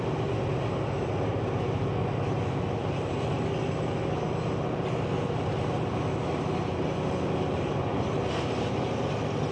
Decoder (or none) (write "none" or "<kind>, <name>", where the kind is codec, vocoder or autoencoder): none